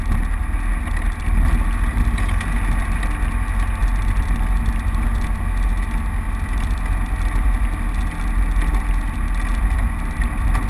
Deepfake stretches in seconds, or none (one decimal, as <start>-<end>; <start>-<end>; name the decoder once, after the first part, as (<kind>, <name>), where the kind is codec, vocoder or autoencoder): none